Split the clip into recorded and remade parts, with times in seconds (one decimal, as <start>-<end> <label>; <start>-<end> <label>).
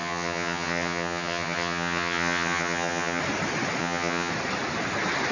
0.0-3.2 remade; 3.2-3.8 recorded; 3.8-4.3 remade; 4.3-5.3 recorded